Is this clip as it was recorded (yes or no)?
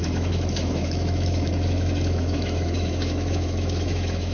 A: no